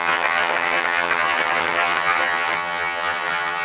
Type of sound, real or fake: fake